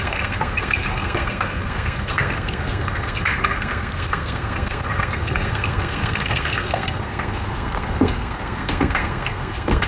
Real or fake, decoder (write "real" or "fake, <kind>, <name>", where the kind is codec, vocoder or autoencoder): fake, codec, SNAC